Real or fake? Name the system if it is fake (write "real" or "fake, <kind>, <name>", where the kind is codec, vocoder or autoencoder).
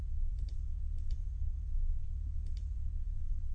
fake, vocoder, BigVGAN v2